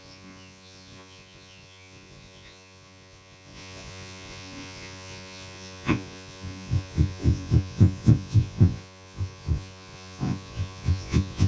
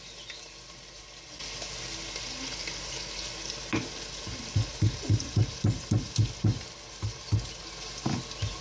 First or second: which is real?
second